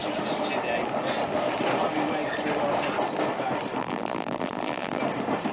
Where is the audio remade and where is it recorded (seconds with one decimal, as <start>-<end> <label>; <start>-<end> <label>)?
0.0-3.8 recorded; 3.8-5.0 remade; 5.0-5.5 recorded